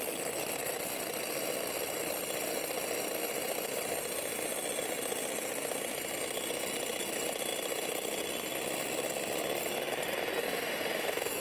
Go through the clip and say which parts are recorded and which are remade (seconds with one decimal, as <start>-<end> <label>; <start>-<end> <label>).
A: 0.0-10.4 recorded; 10.4-11.4 remade